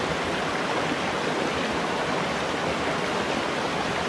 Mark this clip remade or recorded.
recorded